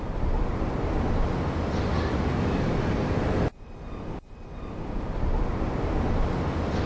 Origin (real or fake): real